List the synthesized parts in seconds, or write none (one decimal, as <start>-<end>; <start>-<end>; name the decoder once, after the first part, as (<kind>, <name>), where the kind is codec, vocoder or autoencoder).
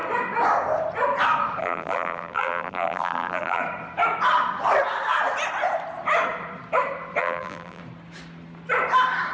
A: 1.6-3.6 (vocoder, BigVGAN v2); 7.2-7.8